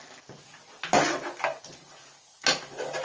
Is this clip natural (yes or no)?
yes